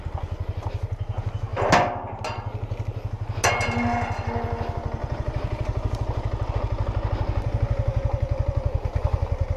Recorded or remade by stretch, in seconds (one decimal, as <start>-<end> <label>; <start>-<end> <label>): 0.0-5.0 recorded; 5.0-6.5 remade; 6.5-9.6 recorded